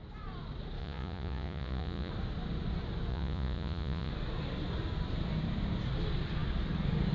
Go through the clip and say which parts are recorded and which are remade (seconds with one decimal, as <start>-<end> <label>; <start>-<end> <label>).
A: 0.0-0.8 recorded; 0.8-2.1 remade; 2.1-3.1 recorded; 3.1-4.1 remade; 4.1-7.1 recorded